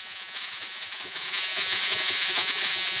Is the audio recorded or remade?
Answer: remade